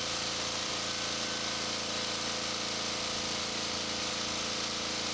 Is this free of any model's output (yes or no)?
yes